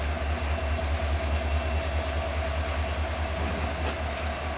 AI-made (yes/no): no